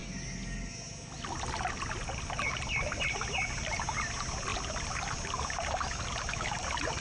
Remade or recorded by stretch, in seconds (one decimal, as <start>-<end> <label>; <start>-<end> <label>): 0.0-7.0 recorded